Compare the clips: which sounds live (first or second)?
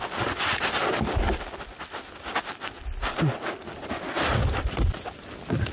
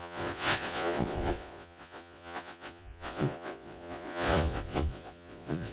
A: first